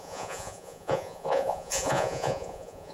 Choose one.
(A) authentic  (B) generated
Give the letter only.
B